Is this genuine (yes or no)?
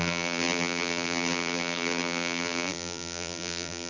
no